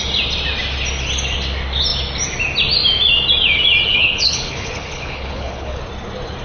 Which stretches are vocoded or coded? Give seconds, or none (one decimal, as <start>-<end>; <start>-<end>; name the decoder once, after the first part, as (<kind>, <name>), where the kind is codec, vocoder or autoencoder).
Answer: 3.9-5.8 (codec, HILCodec)